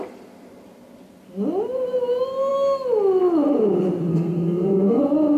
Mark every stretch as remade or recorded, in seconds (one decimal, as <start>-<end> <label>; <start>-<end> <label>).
0.0-4.1 recorded; 4.1-5.0 remade; 5.0-5.4 recorded